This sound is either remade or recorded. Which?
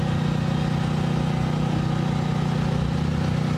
recorded